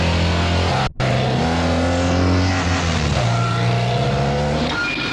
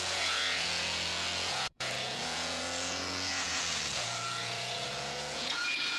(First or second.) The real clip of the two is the first